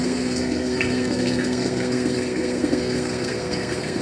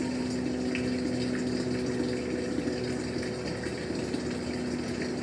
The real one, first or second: second